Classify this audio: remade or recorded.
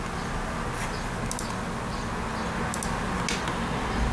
recorded